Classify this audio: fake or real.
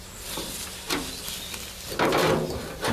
real